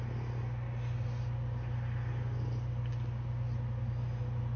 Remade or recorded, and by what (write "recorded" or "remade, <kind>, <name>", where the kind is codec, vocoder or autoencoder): recorded